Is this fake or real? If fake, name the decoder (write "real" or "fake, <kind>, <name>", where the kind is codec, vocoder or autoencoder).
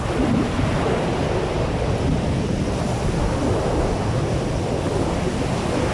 real